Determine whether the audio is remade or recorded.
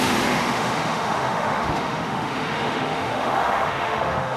remade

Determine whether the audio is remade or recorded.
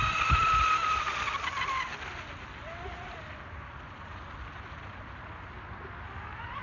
recorded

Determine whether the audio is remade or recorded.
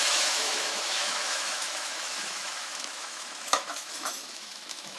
remade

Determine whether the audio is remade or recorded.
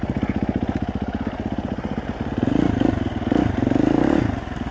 recorded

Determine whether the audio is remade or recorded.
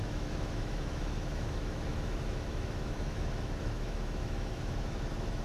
remade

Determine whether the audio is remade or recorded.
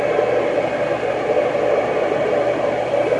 recorded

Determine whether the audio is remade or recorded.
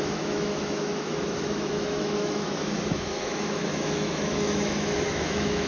remade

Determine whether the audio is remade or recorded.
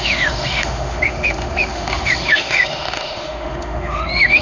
remade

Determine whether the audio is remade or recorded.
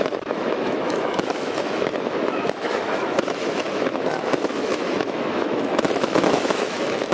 remade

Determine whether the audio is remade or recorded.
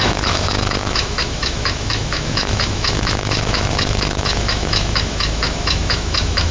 remade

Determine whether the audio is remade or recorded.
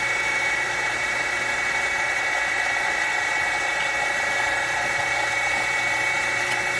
recorded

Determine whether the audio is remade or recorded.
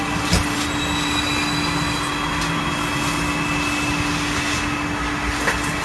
recorded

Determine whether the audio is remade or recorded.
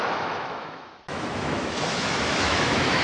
remade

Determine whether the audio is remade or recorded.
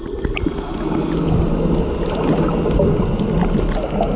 recorded